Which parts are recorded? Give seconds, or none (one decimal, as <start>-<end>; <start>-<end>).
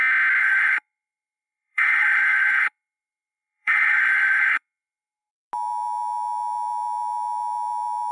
0.0-0.4; 5.3-8.1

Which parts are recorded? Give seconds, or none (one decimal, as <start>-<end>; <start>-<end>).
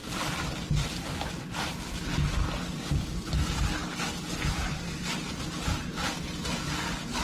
0.0-7.2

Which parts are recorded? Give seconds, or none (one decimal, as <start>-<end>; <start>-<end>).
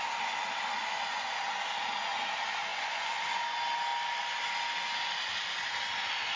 0.0-0.8; 1.4-2.7; 3.4-6.4